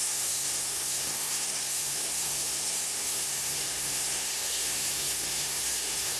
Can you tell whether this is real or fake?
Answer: fake